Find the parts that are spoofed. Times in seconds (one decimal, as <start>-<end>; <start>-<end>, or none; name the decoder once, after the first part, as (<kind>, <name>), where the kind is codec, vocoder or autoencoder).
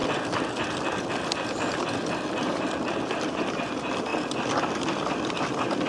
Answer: 0.0-3.5 (vocoder, BigVGAN v2)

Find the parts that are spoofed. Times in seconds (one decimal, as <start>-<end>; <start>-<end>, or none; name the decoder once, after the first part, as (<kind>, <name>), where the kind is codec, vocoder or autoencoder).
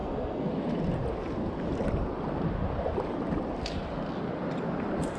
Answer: 0.0-0.5 (codec, SNAC)